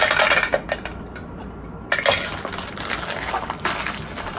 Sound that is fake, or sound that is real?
real